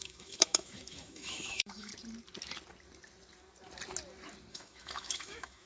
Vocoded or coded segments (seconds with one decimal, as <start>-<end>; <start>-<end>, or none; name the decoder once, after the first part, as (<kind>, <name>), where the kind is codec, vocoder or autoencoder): 0.0-1.9 (autoencoder, DAC-VAE); 4.5-5.7